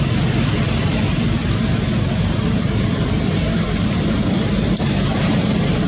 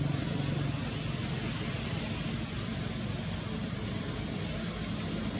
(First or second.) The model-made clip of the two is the first